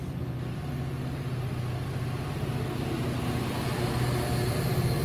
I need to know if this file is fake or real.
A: real